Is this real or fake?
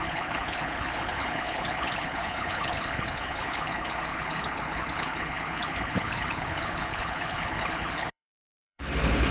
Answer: fake